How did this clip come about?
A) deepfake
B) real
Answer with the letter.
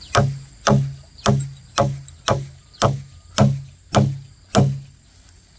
B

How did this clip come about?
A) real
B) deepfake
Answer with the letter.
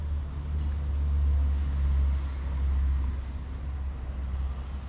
A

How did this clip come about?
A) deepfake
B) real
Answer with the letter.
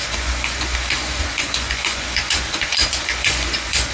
A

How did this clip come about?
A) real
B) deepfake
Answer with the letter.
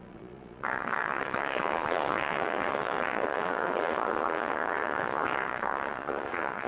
B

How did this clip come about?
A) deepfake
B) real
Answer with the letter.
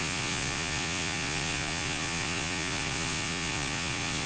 A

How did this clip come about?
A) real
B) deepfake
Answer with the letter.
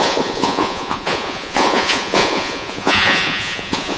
B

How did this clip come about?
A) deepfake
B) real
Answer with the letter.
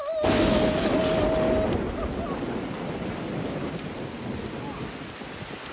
B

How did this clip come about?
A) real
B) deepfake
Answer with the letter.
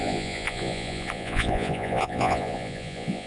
B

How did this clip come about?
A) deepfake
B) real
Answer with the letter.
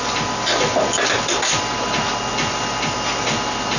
B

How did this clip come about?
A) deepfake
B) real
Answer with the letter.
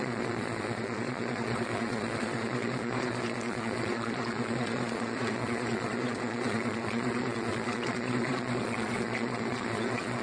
A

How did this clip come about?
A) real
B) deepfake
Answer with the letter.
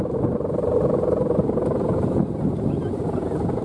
A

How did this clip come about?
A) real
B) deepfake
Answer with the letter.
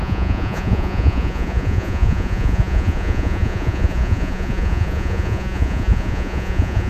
B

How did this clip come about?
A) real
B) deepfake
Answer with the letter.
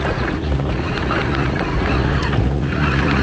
B